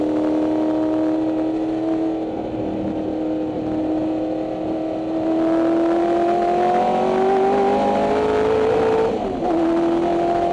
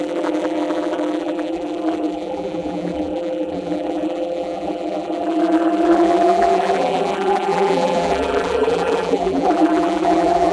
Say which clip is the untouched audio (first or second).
first